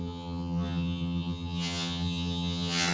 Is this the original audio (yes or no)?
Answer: no